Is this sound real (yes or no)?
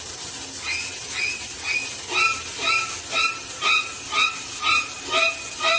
yes